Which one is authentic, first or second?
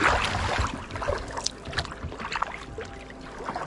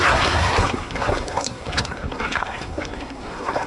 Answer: first